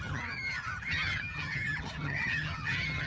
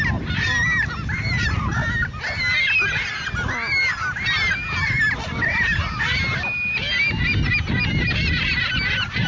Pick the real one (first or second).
second